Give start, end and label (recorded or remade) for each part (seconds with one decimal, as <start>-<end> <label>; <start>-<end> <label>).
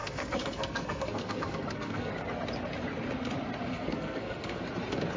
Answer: 0.0-2.1 remade; 2.1-3.7 recorded; 3.7-4.6 remade; 4.6-5.2 recorded